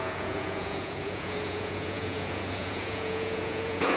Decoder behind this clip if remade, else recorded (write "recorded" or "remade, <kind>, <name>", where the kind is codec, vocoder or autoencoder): remade, vocoder, Vocos